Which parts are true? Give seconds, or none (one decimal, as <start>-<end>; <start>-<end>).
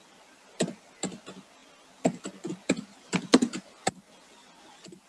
0.0-5.1